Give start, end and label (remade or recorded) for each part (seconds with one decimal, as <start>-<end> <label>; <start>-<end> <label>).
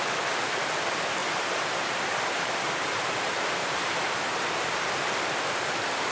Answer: 0.0-1.2 recorded; 1.2-4.9 remade; 4.9-6.1 recorded